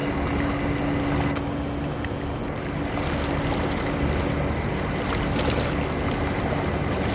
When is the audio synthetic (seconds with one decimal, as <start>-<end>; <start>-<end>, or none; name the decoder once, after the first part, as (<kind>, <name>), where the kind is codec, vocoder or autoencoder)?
none